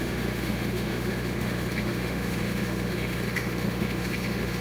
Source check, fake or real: fake